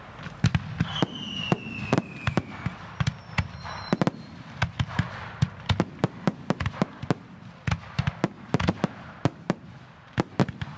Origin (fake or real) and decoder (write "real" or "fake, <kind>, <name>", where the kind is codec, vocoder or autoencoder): real